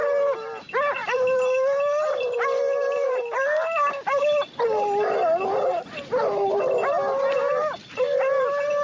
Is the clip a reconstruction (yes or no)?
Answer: no